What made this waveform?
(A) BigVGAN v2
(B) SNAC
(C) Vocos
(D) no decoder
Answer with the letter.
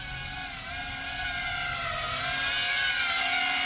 D